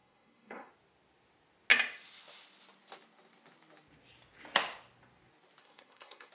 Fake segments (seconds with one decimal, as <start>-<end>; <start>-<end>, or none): 0.0-0.7; 5.6-6.3

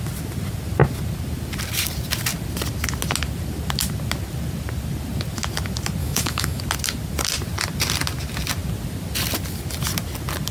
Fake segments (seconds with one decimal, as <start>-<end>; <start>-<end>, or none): 6.0-6.6

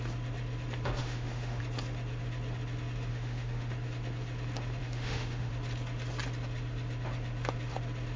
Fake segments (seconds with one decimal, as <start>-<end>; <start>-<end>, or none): 1.0-1.6; 3.1-3.7; 4.8-5.5

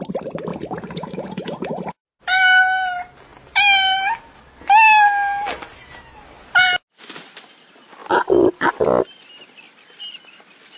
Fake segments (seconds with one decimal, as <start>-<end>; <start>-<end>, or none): 0.5-2.0

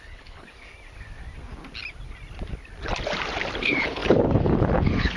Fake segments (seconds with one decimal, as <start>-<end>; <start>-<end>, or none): 0.0-0.5; 3.6-5.2

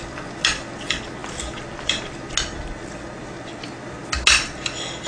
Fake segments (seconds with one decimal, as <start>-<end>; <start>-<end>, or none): none

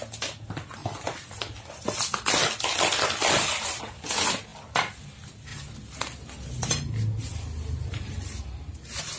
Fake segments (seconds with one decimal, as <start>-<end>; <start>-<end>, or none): none

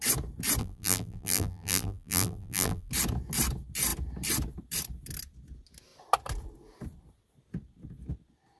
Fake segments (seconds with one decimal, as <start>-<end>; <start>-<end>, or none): 0.6-2.9